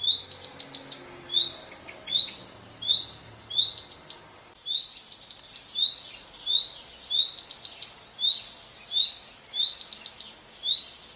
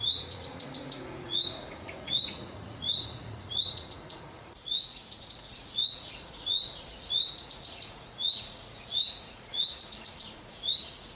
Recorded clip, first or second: first